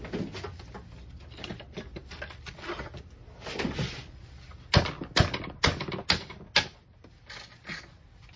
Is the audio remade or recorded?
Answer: recorded